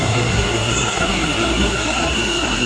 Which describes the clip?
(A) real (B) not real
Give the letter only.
B